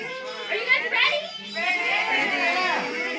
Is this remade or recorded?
recorded